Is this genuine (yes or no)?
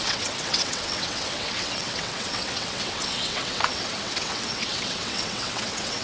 no